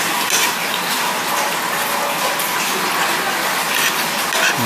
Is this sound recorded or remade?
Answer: recorded